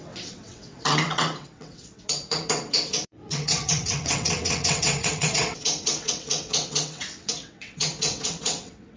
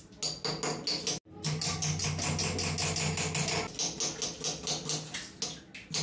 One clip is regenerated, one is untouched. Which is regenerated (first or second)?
first